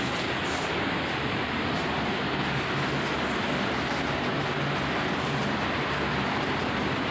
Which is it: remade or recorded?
recorded